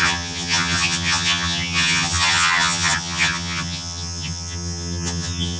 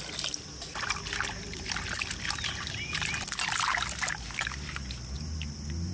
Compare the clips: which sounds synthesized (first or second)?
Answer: first